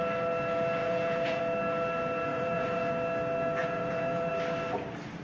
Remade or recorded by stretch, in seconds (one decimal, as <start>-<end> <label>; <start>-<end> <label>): 0.0-0.8 recorded; 0.8-1.4 remade; 1.4-2.3 recorded; 2.3-2.9 remade; 2.9-3.6 recorded; 3.6-4.3 remade; 4.3-5.2 recorded